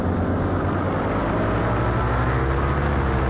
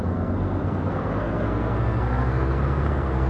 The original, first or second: first